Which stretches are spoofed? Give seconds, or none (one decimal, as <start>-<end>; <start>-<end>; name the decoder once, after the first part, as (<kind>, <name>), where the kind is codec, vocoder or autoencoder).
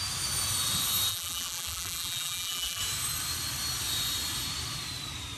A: 1.1-2.8 (vocoder, BigVGAN v2)